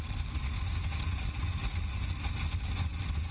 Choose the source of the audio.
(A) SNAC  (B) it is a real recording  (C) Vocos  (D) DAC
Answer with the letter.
B